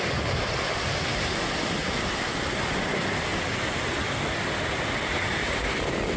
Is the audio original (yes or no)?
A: yes